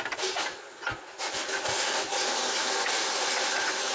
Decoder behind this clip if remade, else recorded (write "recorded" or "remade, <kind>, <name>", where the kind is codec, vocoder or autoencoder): recorded